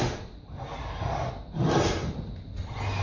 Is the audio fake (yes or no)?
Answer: no